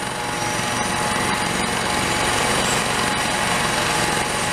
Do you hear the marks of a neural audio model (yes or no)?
yes